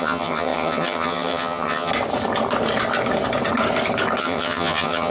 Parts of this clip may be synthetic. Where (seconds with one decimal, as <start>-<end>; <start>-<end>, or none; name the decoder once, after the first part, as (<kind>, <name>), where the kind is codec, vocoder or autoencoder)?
0.0-1.9 (vocoder, HiFi-GAN); 4.2-5.1